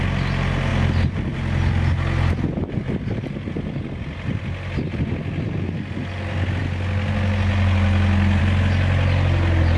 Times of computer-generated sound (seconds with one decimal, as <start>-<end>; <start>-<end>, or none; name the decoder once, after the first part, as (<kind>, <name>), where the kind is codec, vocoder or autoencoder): none